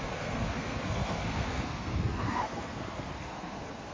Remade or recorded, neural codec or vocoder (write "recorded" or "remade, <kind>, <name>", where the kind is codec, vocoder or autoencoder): remade, codec, SNAC